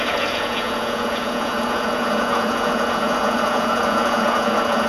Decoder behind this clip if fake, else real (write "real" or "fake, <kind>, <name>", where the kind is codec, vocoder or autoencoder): fake, vocoder, Vocos